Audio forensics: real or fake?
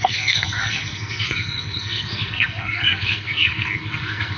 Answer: fake